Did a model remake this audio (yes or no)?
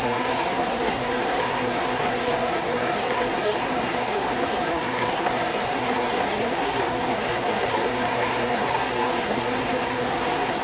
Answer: yes